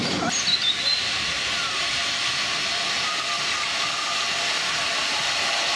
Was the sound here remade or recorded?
recorded